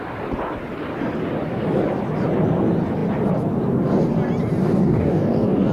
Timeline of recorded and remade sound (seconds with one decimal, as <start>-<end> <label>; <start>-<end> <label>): 0.0-4.6 recorded; 4.6-5.7 remade